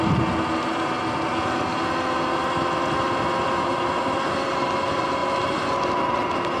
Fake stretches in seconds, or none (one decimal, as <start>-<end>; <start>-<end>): none